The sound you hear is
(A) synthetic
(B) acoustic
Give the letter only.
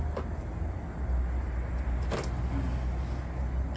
B